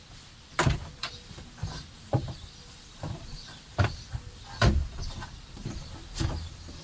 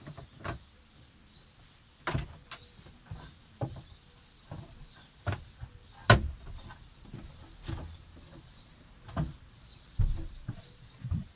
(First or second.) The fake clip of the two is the first